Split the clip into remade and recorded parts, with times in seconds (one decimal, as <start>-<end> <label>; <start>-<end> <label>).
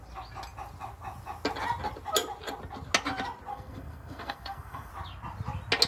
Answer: 0.0-3.5 recorded; 3.5-4.9 remade; 4.9-5.9 recorded